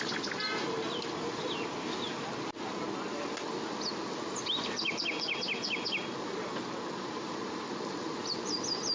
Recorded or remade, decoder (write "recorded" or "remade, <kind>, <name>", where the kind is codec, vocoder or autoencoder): recorded